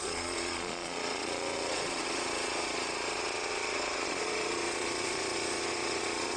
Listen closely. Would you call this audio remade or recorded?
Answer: remade